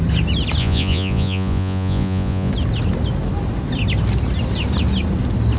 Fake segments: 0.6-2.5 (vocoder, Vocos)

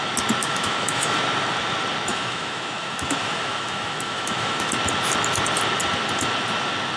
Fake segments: 0.4-1.1 (autoencoder, DAC-VAE); 2.1-4.7